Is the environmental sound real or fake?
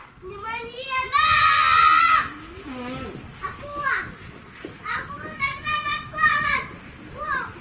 real